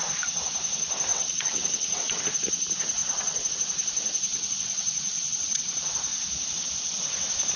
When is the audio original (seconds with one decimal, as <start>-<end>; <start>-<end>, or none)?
0.0-1.1; 2.2-4.3; 5.6-7.6